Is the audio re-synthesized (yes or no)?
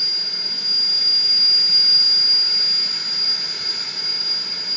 no